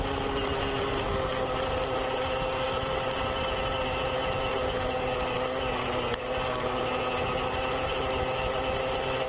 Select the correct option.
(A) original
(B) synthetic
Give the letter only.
A